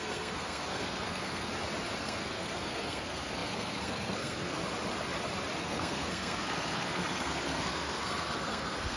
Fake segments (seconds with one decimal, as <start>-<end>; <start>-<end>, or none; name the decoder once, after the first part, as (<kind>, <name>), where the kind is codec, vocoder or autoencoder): 0.0-1.5 (codec, SNAC); 2.0-4.6; 5.6-9.0